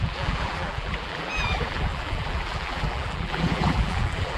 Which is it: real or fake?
fake